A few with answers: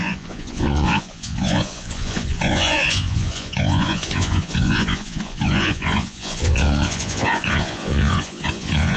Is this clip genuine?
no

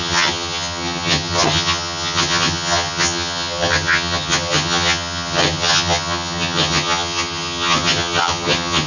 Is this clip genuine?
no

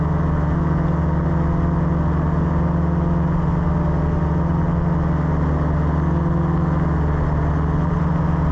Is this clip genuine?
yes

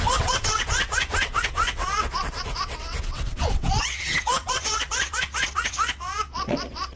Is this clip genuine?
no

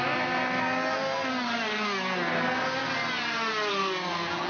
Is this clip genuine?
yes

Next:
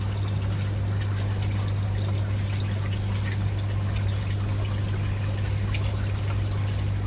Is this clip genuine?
yes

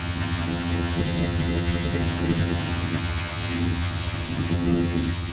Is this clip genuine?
no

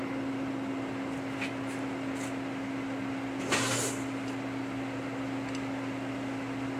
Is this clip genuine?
yes